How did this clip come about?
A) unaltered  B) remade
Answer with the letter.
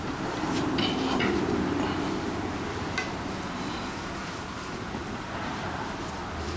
B